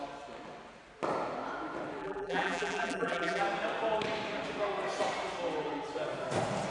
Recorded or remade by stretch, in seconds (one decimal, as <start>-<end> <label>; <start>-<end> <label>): 0.0-2.0 recorded; 2.0-3.4 remade; 3.4-6.7 recorded